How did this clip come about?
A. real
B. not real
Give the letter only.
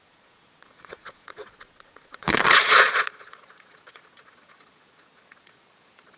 B